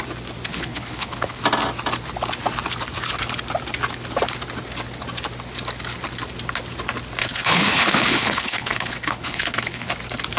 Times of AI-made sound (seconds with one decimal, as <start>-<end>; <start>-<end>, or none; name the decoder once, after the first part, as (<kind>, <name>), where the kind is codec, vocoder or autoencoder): 0.5-1.4 (codec, HILCodec); 7.2-9.9